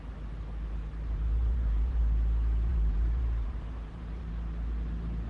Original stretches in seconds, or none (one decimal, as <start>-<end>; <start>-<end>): 0.0-0.9; 2.0-2.7; 4.3-5.3